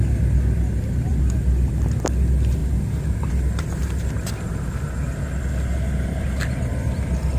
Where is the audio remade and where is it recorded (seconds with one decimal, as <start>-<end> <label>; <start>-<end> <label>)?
0.0-7.4 recorded